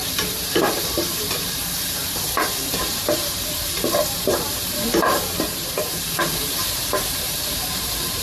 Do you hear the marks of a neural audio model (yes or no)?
yes